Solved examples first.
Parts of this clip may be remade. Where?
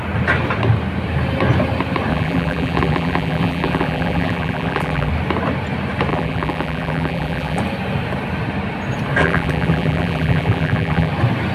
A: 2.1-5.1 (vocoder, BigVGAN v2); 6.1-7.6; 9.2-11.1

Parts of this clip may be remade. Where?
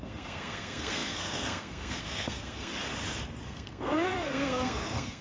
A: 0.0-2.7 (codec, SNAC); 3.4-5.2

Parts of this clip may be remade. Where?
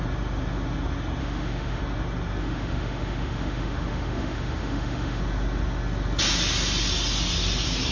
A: 1.2-1.8 (autoencoder, DAC-VAE); 2.4-5.2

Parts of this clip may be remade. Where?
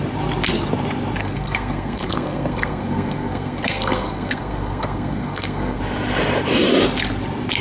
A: 1.2-5.8 (codec, SNAC)